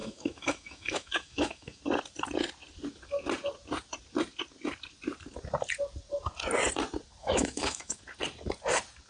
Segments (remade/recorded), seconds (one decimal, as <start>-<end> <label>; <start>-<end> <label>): 0.0-1.8 remade; 1.8-7.2 recorded; 7.2-8.0 remade; 8.0-9.1 recorded